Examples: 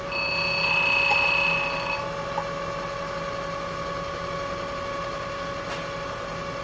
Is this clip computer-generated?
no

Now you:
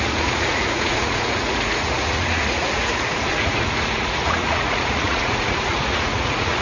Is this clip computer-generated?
yes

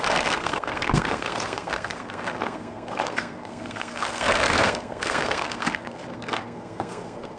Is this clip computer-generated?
yes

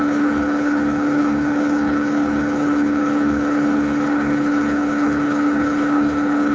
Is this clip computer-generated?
yes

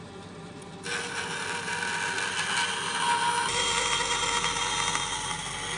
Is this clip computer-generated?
no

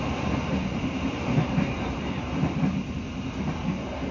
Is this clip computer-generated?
no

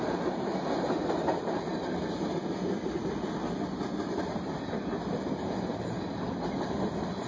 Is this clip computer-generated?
no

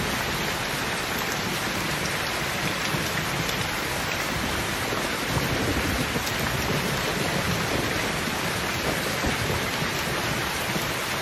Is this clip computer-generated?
no